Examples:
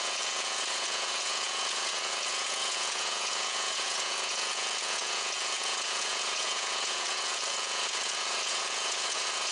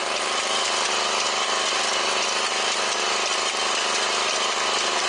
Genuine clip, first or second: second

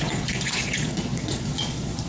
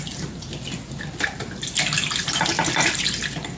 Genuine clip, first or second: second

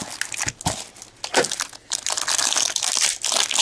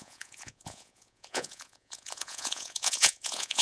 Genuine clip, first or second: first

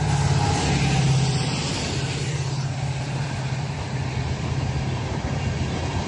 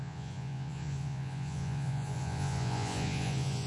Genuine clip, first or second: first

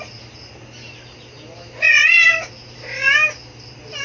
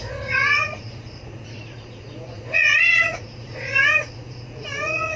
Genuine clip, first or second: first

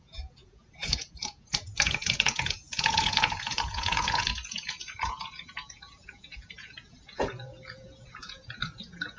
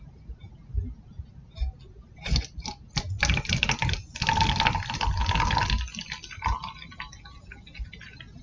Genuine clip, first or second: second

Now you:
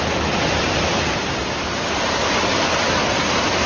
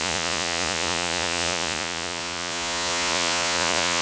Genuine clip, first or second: first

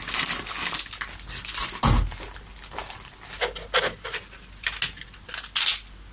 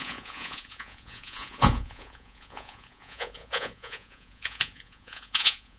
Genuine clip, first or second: first